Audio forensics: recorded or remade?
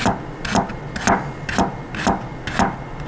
recorded